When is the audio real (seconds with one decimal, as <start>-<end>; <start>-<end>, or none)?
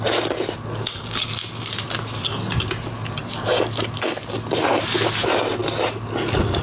0.0-6.6